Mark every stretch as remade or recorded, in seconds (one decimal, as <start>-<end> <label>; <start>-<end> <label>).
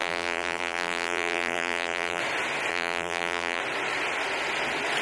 0.0-2.2 remade; 2.2-2.7 recorded; 2.7-3.6 remade; 3.6-5.0 recorded